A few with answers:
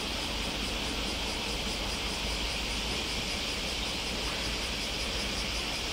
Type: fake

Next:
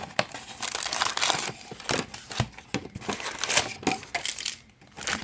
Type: real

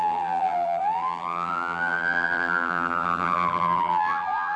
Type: fake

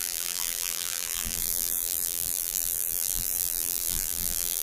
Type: fake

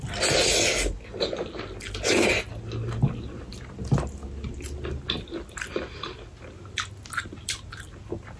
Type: real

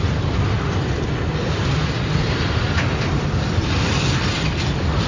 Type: fake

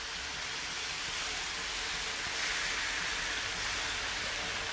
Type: real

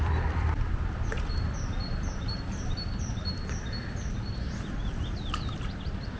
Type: fake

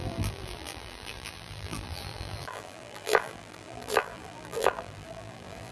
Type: fake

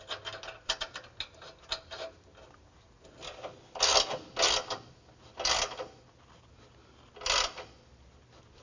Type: real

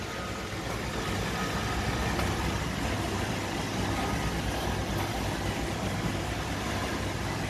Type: real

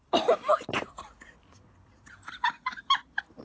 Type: fake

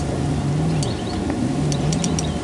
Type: real